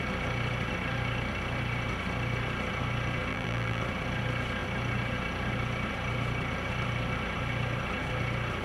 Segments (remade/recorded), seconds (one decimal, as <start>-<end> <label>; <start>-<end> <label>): 0.0-3.3 recorded; 3.3-3.8 remade; 3.8-8.6 recorded